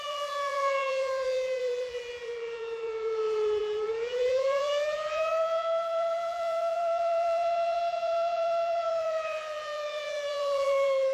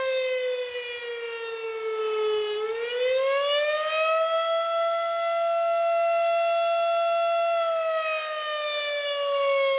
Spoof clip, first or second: first